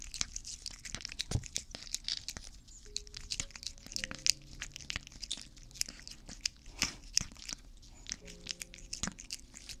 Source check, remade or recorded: recorded